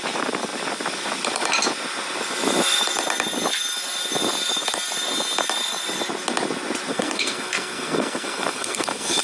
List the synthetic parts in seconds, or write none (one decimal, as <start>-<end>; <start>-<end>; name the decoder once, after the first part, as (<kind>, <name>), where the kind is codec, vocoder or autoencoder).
6.9-9.2 (codec, SNAC)